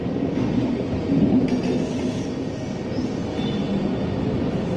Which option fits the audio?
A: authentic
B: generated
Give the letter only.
A